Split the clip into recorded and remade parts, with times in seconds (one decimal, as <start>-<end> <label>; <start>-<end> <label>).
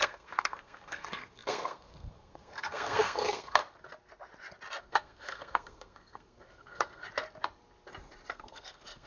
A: 0.0-3.6 remade; 3.6-4.8 recorded; 4.8-7.0 remade; 7.0-8.3 recorded; 8.3-9.1 remade